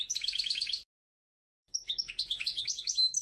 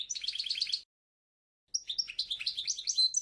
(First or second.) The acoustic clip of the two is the second